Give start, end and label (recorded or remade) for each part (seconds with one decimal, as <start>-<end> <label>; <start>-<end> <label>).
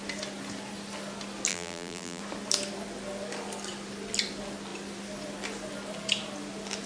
0.0-1.5 recorded; 1.5-2.2 remade; 2.2-6.9 recorded